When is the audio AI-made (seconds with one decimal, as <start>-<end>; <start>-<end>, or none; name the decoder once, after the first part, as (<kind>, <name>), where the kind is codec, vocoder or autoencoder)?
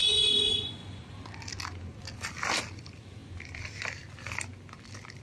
0.0-1.0 (vocoder, Vocos)